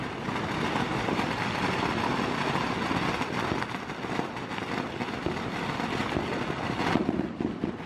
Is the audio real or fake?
real